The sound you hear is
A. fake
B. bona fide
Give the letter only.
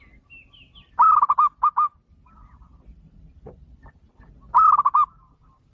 B